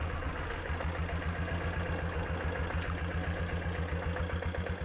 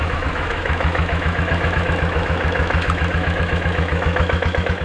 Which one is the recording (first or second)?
first